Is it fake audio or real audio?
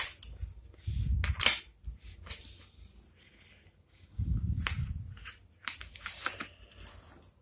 real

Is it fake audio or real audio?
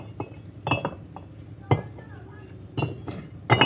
real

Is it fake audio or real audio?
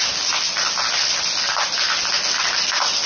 real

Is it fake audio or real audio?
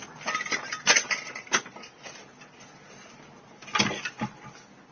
real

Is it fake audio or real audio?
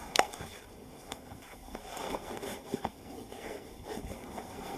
fake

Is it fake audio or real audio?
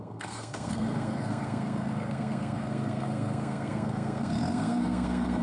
fake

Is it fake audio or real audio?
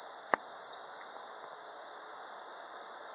real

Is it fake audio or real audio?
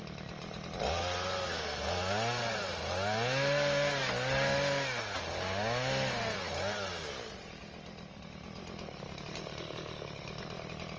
real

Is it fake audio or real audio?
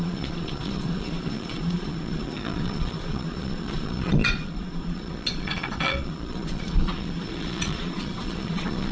fake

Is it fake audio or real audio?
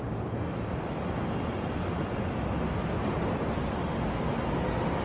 real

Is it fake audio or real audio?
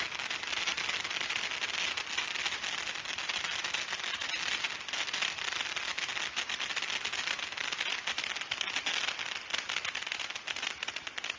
real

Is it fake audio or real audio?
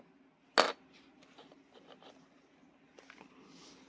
real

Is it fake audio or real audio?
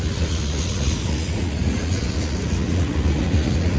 fake